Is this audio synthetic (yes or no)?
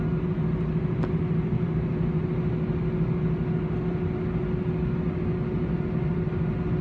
no